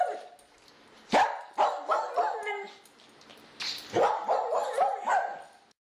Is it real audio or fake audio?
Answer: real